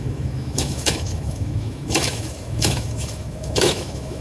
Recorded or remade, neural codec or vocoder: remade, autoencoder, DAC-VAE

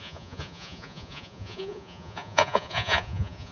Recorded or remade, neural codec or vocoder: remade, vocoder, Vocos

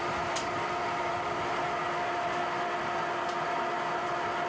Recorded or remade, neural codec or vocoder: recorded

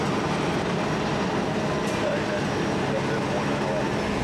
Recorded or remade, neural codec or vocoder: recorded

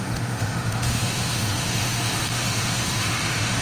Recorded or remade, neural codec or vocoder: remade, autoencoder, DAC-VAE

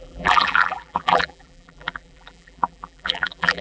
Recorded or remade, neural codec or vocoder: remade, vocoder, BigVGAN v2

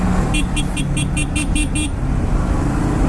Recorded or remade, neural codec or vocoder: recorded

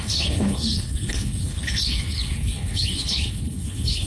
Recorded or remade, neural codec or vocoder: remade, codec, HILCodec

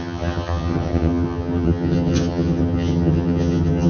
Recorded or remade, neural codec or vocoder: remade, vocoder, HiFi-GAN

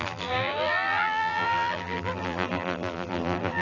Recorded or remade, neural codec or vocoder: remade, vocoder, BigVGAN v2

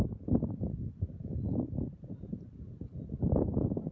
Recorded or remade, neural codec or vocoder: recorded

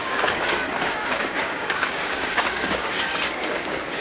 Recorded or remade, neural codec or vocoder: remade, codec, DAC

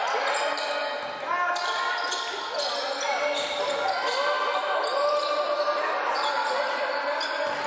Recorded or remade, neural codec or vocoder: recorded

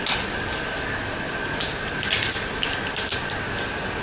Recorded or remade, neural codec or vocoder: recorded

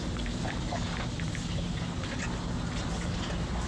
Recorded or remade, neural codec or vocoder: recorded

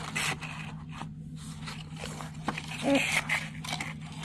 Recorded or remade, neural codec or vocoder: recorded